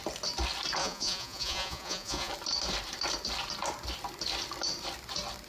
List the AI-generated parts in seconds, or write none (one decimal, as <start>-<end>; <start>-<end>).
0.8-2.3